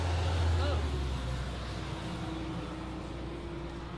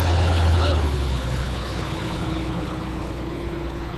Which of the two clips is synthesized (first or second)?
second